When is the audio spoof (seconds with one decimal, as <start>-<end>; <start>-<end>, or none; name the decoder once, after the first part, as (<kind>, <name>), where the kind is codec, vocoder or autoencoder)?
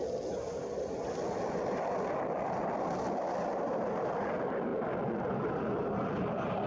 0.0-4.7 (vocoder, BigVGAN v2); 6.1-6.7